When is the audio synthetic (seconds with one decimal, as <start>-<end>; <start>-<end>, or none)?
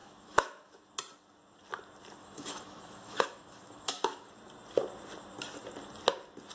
0.0-0.9; 2.2-4.3